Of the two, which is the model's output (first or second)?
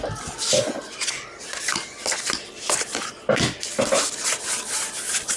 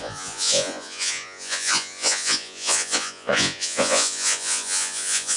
second